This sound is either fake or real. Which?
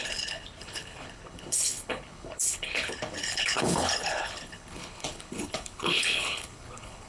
fake